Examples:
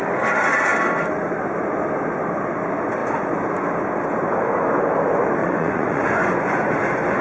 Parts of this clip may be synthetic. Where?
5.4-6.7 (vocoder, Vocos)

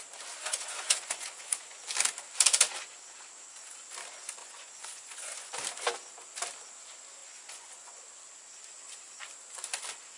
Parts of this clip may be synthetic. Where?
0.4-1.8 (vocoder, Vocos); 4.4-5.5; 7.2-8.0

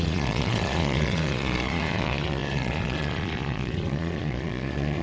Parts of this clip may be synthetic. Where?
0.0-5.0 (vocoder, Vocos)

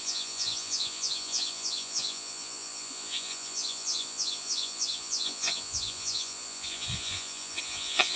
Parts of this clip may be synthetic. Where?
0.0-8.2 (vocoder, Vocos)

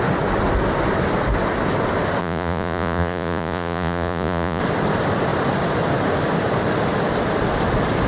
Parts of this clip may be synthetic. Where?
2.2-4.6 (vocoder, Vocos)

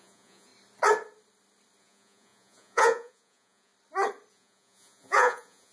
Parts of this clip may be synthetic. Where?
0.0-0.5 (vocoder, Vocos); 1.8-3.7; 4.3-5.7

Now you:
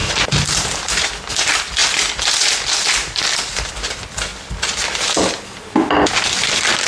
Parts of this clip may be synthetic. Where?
none

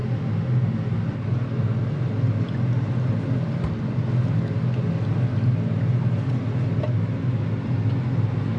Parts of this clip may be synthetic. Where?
none